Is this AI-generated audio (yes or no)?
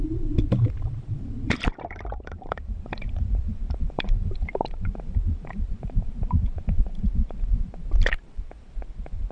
yes